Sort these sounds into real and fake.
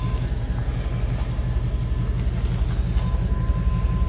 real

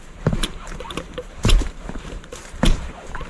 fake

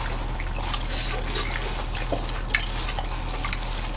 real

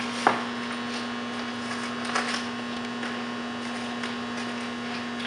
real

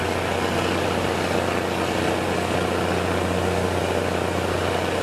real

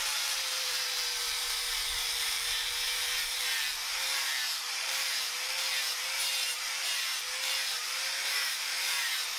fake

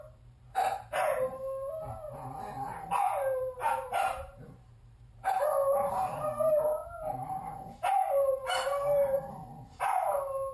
fake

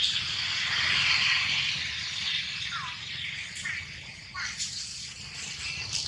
real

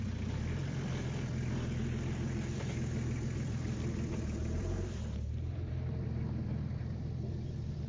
fake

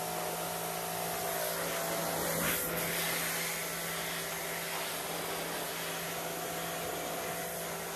real